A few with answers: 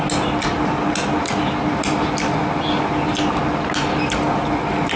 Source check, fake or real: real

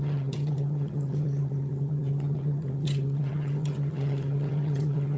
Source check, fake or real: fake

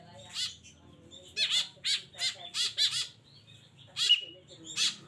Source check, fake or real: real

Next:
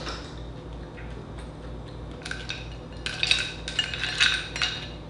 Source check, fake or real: real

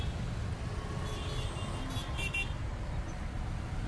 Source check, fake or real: real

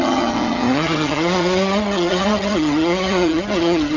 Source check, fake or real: fake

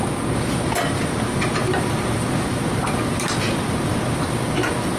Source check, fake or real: real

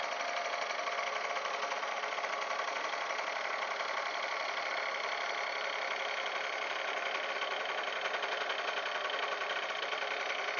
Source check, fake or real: real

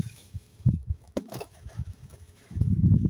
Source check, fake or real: fake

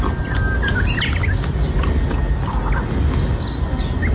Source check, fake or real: real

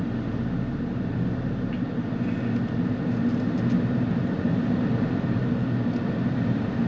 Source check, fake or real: real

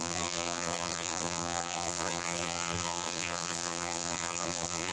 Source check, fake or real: fake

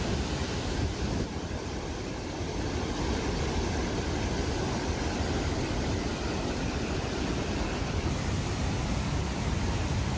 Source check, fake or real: real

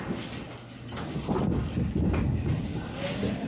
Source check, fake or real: real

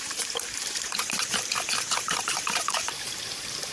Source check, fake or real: fake